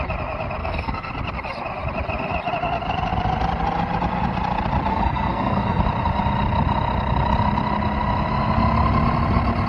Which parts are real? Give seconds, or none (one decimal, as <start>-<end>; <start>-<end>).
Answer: 0.0-0.6; 1.1-4.9; 5.8-9.7